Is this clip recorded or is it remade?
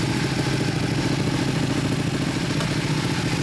recorded